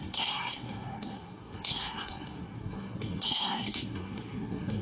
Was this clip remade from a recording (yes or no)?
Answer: yes